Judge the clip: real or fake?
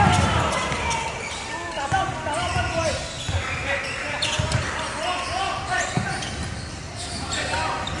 real